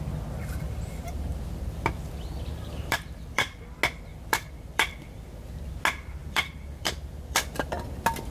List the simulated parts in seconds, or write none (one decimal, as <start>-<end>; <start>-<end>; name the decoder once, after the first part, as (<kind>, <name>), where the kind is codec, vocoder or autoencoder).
1.3-3.6 (vocoder, BigVGAN v2); 4.1-5.7; 6.2-7.8